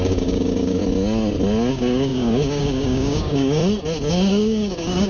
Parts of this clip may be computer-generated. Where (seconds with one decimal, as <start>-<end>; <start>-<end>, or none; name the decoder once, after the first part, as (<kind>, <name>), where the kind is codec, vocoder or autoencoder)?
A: 0.0-0.8 (codec, DAC); 1.7-3.6; 4.1-5.1